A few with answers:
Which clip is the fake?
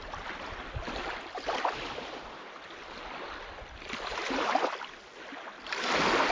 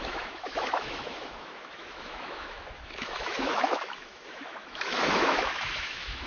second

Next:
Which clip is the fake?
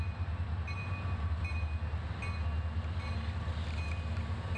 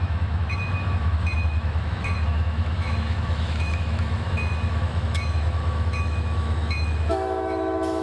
second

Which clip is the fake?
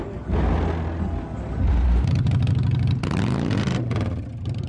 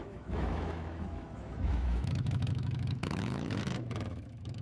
second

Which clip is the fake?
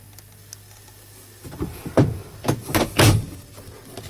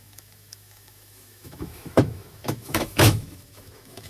second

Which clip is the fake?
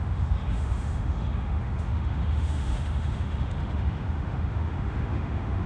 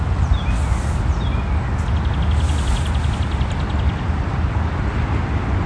first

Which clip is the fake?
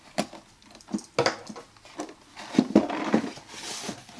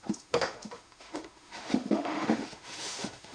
second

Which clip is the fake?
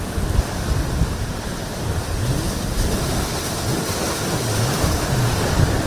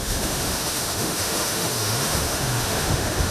second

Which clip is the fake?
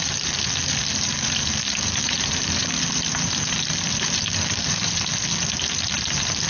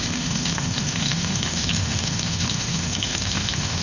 second